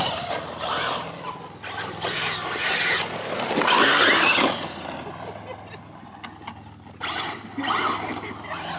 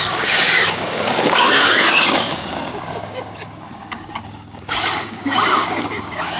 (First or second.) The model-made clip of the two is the second